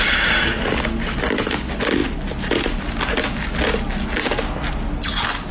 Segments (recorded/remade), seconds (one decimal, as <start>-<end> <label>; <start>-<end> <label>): 0.0-5.5 recorded